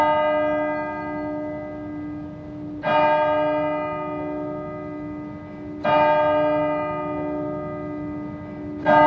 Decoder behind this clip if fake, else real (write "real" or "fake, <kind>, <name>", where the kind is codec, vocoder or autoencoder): real